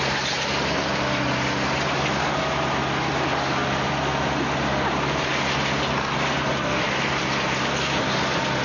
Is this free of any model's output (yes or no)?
yes